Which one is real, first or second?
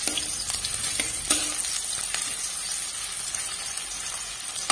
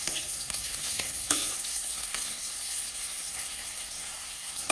first